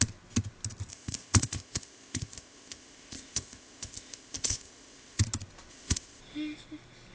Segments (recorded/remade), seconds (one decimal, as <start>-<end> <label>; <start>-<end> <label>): 0.0-0.9 recorded; 0.9-5.2 remade; 5.2-5.7 recorded; 5.7-6.2 remade; 6.2-7.1 recorded